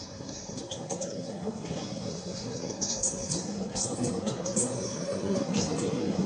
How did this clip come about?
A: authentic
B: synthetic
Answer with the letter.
B